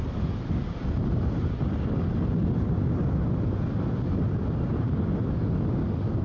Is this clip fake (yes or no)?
no